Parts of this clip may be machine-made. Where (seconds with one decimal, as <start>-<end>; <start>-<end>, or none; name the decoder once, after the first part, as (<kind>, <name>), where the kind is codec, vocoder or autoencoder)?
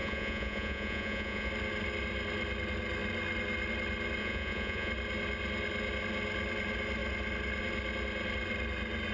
0.0-1.5 (vocoder, Vocos); 4.2-4.9